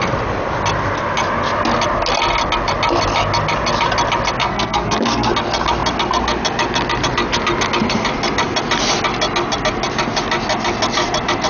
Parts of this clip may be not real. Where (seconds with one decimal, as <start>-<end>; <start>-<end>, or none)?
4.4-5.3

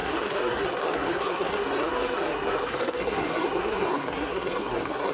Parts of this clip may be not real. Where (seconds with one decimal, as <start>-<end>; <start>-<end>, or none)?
0.0-5.1

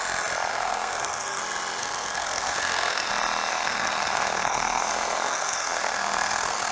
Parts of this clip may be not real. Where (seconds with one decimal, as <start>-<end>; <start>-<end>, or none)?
0.5-1.4; 1.8-3.1; 3.5-6.7

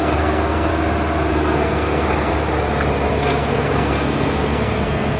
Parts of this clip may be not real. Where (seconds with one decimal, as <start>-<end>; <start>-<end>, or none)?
0.0-0.7; 1.3-2.3; 3.1-5.2